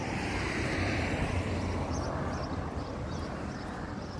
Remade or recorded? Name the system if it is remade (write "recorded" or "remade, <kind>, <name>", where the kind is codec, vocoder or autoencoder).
remade, vocoder, BigVGAN v2